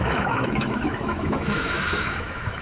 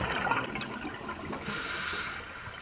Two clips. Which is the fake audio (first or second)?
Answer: first